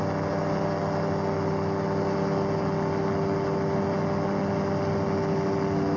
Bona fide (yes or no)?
yes